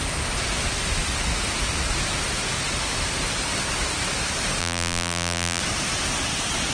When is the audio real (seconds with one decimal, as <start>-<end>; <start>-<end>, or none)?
0.0-4.6; 5.6-6.7

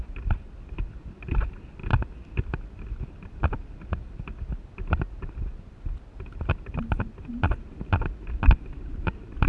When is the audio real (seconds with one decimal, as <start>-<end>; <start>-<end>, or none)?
0.0-9.5

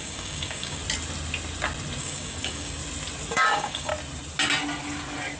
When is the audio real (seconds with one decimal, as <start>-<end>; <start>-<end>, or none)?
0.8-2.0; 2.8-3.3; 3.9-5.4

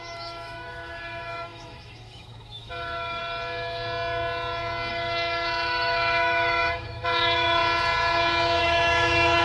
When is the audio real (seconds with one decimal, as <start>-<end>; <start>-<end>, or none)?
3.2-4.9; 7.6-8.6